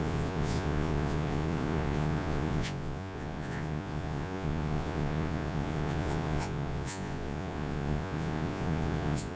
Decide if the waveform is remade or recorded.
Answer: remade